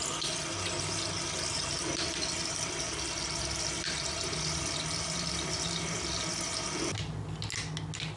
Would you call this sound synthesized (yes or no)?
no